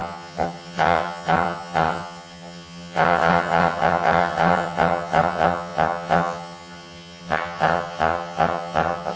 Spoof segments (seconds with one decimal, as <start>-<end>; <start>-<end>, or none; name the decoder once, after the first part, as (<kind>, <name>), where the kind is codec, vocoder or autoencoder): 0.0-9.2 (vocoder, HiFi-GAN)